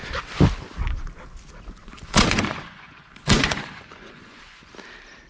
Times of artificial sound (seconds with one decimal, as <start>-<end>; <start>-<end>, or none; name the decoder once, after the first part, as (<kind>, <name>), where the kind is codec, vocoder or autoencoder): 1.8-4.7 (vocoder, Vocos)